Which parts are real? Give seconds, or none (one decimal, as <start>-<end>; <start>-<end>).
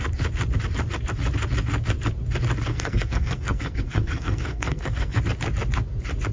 0.0-2.7; 5.2-6.3